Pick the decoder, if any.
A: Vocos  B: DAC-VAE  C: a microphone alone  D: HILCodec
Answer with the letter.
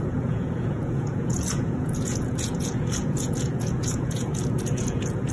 A